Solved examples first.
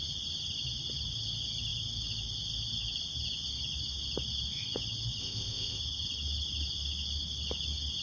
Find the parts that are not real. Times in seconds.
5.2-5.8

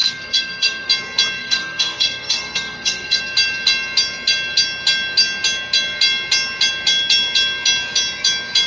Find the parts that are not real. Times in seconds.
0.0-0.9; 1.4-3.2

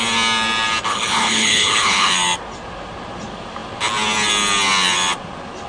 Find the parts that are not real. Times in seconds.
0.9-2.1

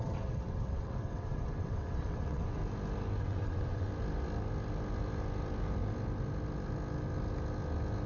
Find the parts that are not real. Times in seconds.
0.0-2.6; 3.2-3.9